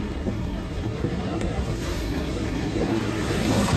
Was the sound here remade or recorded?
remade